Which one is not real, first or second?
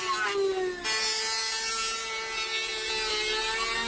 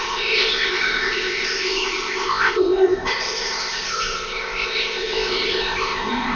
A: second